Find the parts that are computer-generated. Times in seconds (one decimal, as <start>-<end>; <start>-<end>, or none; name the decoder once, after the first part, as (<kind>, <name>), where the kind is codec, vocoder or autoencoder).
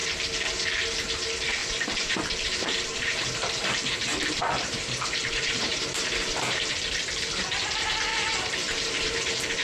1.6-6.7 (vocoder, BigVGAN v2); 8.1-9.6